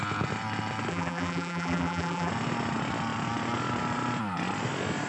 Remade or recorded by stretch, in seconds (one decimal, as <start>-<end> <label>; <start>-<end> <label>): 0.0-0.9 recorded; 0.9-2.3 remade; 2.3-5.1 recorded